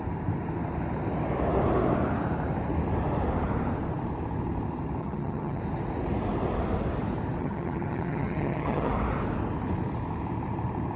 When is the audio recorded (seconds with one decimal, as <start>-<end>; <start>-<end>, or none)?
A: 0.0-5.0; 5.6-7.4; 8.9-11.0